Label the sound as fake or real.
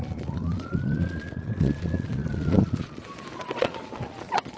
fake